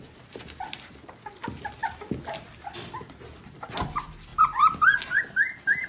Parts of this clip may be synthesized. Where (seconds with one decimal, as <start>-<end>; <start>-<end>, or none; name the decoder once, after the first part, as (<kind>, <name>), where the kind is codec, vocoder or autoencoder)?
0.0-1.8 (vocoder, BigVGAN v2); 2.7-4.3